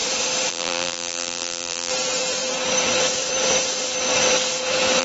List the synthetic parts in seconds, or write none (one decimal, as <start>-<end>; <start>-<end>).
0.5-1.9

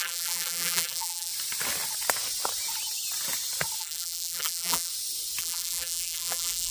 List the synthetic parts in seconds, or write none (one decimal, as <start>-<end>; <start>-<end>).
0.0-1.3; 3.8-4.9; 5.4-6.7

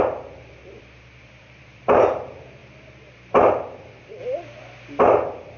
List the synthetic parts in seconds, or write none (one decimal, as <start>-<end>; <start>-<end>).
0.0-2.6; 3.5-4.2; 5.0-5.6